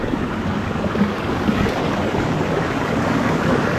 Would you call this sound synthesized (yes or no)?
yes